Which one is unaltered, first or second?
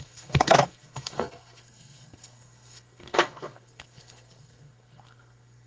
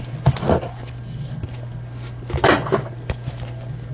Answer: second